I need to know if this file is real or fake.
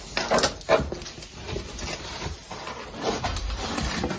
real